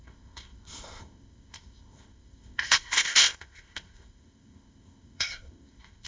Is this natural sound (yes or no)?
no